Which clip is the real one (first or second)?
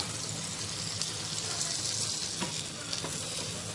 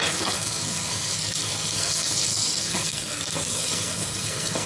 first